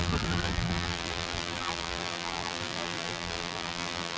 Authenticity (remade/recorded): remade